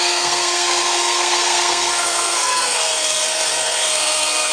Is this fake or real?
fake